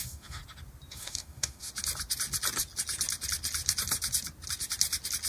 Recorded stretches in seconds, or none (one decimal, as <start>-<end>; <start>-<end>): 0.4-0.9; 1.7-5.3